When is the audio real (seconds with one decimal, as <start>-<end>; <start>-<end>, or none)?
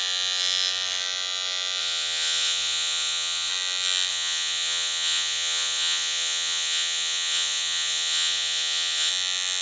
0.0-1.8; 3.5-4.1; 9.1-9.6